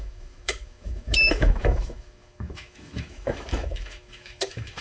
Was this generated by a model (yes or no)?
yes